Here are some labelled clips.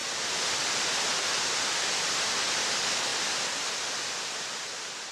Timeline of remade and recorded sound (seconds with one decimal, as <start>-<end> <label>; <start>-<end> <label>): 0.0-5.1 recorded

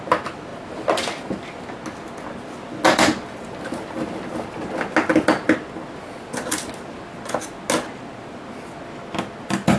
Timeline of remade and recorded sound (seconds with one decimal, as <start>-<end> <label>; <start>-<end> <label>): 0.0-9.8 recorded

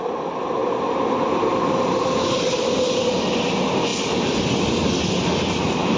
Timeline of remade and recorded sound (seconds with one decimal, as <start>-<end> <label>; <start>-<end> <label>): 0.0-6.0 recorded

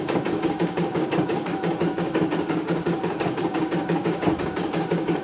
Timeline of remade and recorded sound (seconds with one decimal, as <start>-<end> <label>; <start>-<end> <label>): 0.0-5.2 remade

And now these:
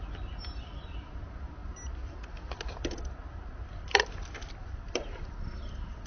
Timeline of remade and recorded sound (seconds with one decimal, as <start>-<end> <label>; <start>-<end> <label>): 0.0-6.1 recorded

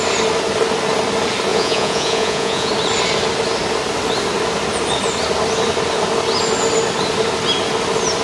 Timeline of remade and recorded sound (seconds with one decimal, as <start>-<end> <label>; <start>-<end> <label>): 0.0-1.5 recorded; 1.5-2.7 remade; 2.7-8.2 recorded

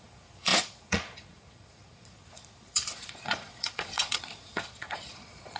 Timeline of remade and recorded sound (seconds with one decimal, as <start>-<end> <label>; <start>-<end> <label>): 0.0-5.6 remade